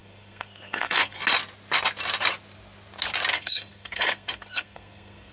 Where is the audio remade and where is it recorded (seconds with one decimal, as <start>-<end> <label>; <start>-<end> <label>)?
0.0-1.2 remade; 1.2-3.3 recorded; 3.3-5.3 remade